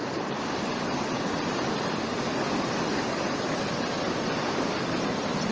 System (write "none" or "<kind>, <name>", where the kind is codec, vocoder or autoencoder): none